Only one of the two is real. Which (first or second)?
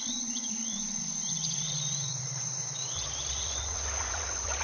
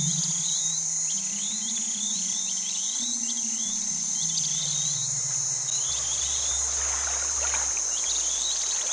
second